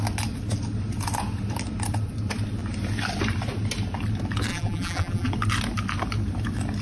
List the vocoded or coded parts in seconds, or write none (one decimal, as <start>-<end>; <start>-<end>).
4.5-5.3